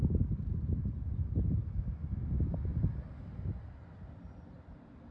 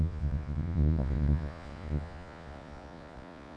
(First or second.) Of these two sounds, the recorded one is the first